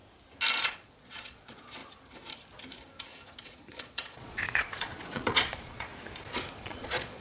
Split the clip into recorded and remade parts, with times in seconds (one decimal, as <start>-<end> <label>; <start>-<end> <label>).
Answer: 0.0-0.6 recorded; 0.6-1.8 remade; 1.8-3.4 recorded; 3.4-5.9 remade; 5.9-6.6 recorded; 6.6-7.2 remade